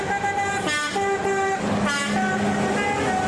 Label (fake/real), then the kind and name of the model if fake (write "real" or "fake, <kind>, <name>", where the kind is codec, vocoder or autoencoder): real